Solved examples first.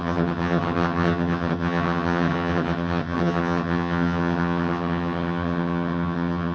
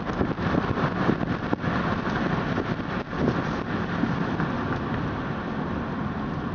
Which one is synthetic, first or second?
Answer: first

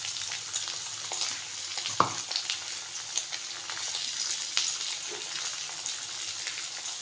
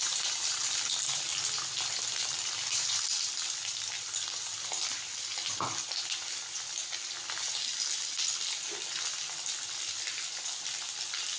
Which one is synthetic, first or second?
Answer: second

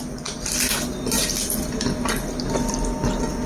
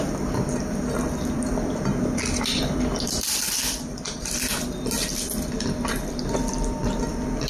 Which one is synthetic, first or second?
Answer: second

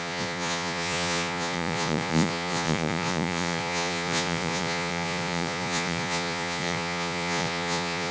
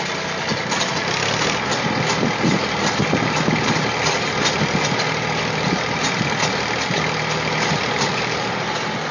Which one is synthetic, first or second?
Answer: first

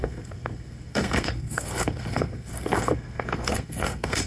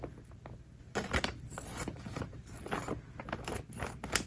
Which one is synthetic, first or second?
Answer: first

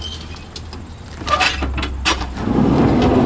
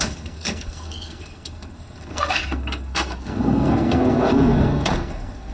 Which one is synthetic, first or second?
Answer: second